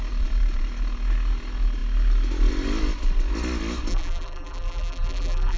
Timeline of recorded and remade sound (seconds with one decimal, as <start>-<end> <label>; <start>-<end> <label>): 0.0-3.9 recorded; 3.9-5.6 remade